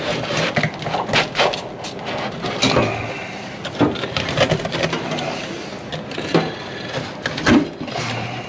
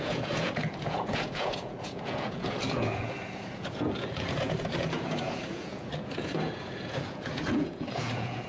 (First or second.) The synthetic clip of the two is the second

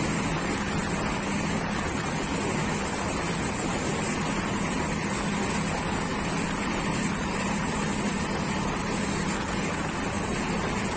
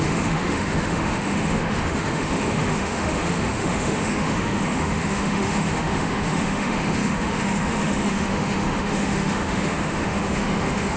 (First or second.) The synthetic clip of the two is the second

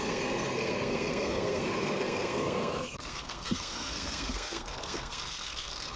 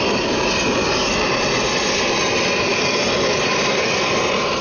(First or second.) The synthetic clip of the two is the first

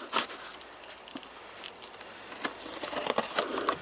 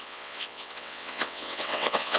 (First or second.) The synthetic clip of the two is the second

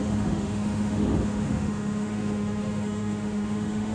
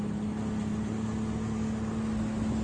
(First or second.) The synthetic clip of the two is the first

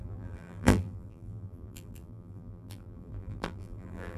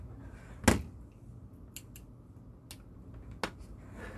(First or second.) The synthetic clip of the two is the first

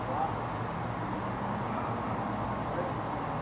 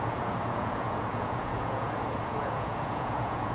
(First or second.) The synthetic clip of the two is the second